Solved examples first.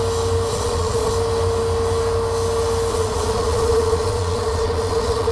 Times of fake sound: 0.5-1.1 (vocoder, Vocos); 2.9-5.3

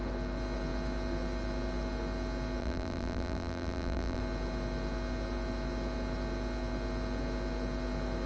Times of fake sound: 2.6-4.2 (vocoder, BigVGAN v2)

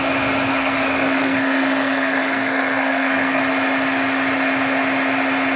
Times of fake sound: 0.5-3.4 (codec, SNAC)

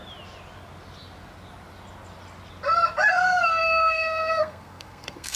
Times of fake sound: 3.1-5.4 (codec, SNAC)